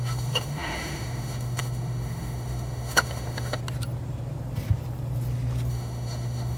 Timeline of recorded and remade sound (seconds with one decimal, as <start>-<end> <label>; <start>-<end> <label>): 0.0-3.6 remade; 3.6-5.7 recorded; 5.7-6.6 remade